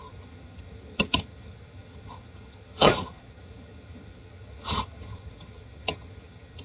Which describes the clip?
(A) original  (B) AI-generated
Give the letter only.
B